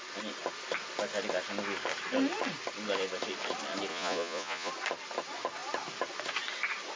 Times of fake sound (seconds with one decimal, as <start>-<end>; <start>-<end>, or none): 3.9-4.7